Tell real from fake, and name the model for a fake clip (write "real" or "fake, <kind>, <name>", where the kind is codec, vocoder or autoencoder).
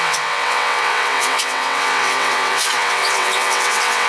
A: fake, vocoder, WaveNeXt